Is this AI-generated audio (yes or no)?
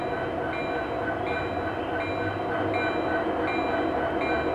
no